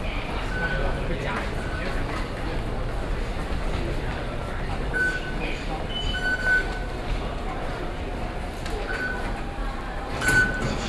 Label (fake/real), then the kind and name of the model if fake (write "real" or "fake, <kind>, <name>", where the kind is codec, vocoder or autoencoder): real